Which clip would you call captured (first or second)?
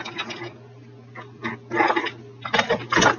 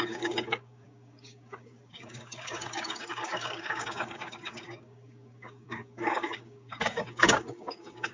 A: first